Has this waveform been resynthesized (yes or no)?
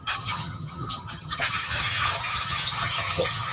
yes